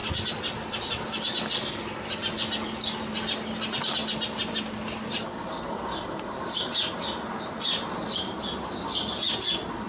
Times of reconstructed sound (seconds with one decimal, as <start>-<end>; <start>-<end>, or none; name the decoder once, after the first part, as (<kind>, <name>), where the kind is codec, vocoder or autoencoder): none